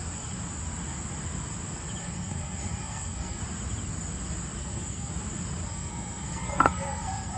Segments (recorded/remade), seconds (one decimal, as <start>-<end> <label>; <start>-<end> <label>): 0.0-2.0 recorded; 2.0-3.4 remade; 3.4-4.6 recorded; 4.6-5.1 remade; 5.1-5.7 recorded; 5.7-7.4 remade